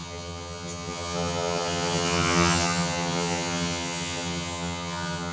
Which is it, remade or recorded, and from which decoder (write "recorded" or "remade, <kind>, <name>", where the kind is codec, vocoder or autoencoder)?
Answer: remade, vocoder, HiFi-GAN